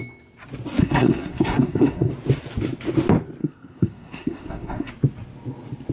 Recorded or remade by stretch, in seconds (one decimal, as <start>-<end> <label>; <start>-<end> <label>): 0.0-0.8 recorded; 0.8-2.1 remade; 2.1-3.4 recorded; 3.4-4.9 remade; 4.9-5.9 recorded